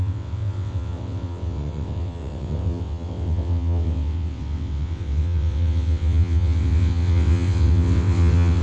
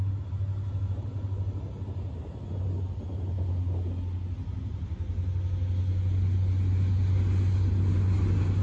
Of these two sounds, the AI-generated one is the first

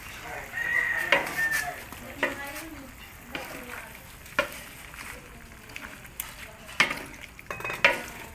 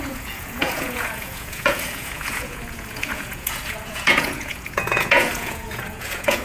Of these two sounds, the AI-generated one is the second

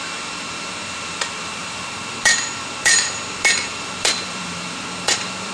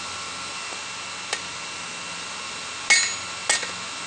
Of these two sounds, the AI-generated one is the first